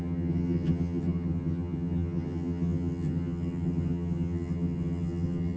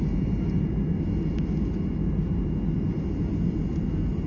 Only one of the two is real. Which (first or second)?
second